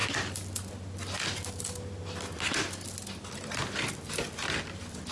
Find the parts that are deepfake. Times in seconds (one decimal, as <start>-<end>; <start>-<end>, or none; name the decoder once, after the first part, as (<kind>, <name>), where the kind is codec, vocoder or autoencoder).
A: none